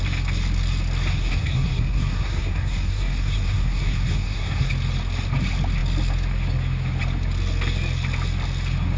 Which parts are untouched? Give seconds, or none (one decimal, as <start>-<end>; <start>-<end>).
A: 0.0-1.1; 4.7-9.0